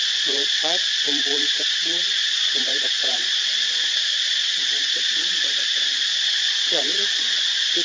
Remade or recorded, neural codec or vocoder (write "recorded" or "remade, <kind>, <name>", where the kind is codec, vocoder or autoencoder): remade, vocoder, Vocos